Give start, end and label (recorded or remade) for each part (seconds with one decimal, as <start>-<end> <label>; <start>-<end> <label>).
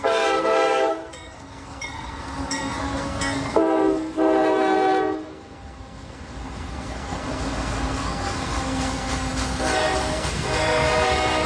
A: 0.0-11.5 remade